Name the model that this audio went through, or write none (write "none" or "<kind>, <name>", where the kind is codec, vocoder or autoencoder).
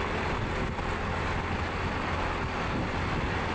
none